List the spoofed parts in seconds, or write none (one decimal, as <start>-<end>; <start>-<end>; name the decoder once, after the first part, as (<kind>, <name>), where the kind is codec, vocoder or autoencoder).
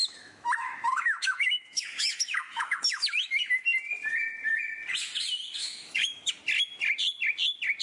0.0-3.4 (autoencoder, DAC-VAE); 5.6-6.3